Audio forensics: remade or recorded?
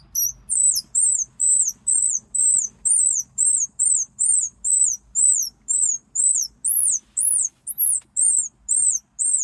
recorded